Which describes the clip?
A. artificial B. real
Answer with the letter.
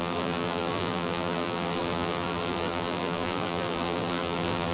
A